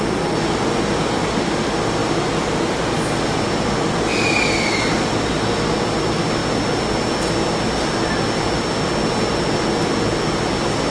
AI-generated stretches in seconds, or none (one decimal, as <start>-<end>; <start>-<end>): none